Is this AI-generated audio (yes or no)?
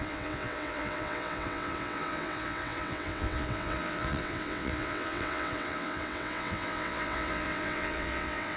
yes